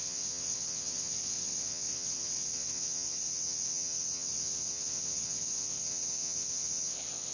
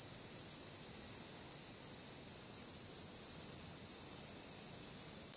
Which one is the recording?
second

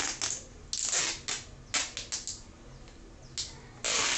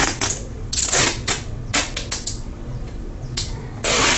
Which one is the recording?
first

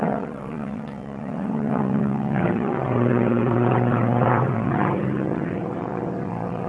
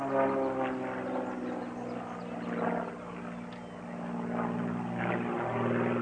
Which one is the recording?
second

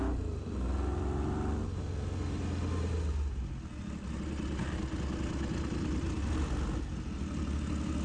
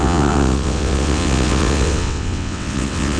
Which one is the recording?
first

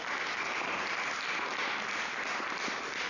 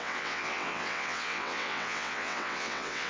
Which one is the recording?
first